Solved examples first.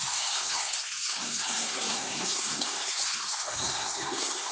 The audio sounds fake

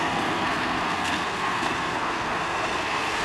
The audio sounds fake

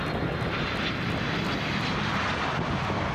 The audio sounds real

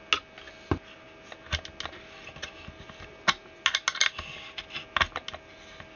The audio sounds real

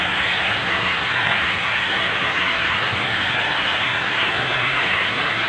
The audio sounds fake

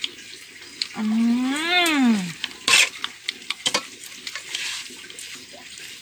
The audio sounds real